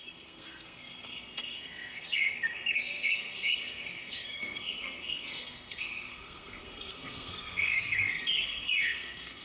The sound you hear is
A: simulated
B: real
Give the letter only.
A